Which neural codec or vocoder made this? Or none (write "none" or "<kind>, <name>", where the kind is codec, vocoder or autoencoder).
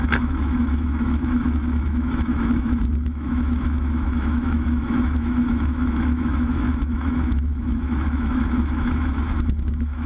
autoencoder, DAC-VAE